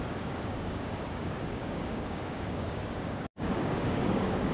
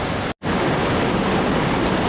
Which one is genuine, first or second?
second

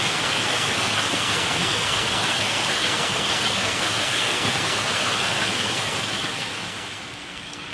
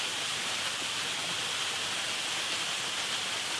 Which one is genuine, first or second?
second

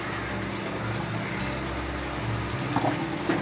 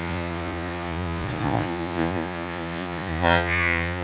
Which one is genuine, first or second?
first